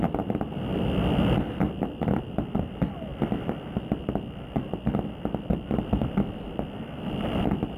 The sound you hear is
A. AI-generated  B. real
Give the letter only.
A